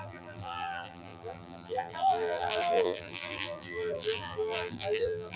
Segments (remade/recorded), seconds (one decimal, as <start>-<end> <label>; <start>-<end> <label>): 0.0-5.4 remade